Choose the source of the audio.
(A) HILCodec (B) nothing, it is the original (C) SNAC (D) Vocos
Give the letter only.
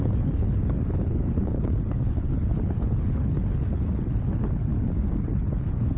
A